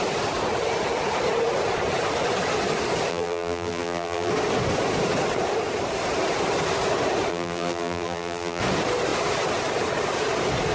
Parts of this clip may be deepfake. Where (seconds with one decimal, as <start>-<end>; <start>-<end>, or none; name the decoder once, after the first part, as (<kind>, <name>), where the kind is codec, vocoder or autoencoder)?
3.1-4.3 (vocoder, BigVGAN v2); 7.3-8.6